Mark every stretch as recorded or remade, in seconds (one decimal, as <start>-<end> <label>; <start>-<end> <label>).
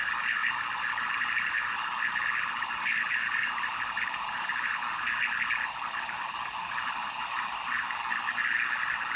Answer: 0.0-9.2 recorded